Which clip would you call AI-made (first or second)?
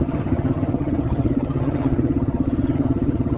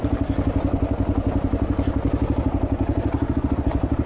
first